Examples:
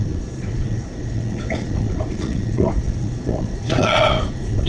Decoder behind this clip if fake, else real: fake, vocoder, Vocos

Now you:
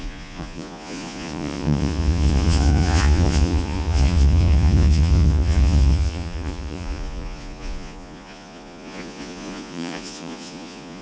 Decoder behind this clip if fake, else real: fake, vocoder, Vocos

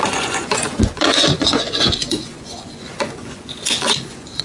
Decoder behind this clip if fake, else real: fake, vocoder, Vocos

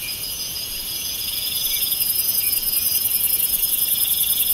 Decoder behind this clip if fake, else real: fake, vocoder, Vocos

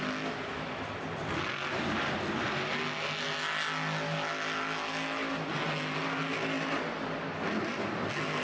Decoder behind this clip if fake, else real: real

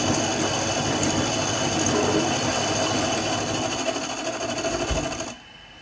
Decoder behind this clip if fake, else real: real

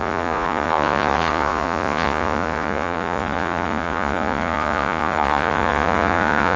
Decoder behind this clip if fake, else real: fake, vocoder, Vocos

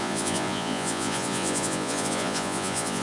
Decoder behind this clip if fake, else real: fake, vocoder, Vocos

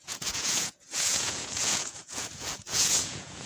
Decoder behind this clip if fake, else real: fake, vocoder, Vocos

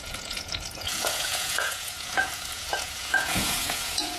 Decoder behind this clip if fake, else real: fake, vocoder, Vocos